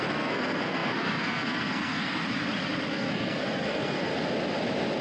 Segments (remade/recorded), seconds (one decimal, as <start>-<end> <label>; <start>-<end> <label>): 0.0-2.2 remade; 2.2-2.9 recorded; 2.9-4.1 remade; 4.1-5.0 recorded